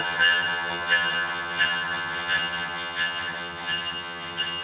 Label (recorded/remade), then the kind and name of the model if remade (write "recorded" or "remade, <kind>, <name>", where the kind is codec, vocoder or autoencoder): remade, vocoder, HiFi-GAN